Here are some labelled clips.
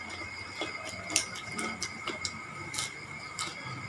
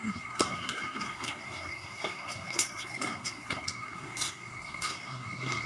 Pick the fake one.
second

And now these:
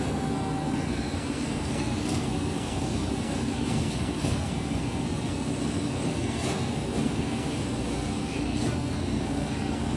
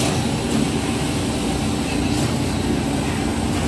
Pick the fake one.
first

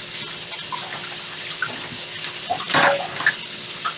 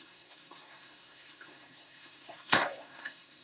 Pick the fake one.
second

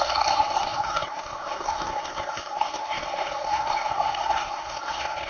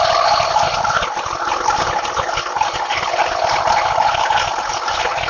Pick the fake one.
first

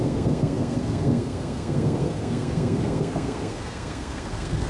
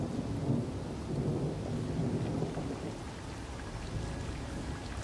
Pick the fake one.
first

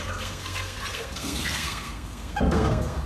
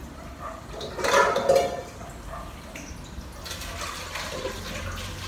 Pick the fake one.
first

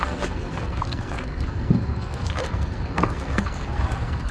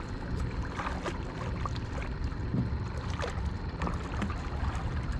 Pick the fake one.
first